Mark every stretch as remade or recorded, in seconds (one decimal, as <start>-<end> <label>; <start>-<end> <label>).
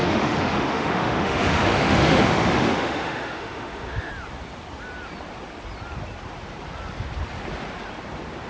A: 0.0-4.1 remade; 4.1-8.5 recorded